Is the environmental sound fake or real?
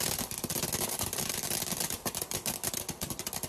real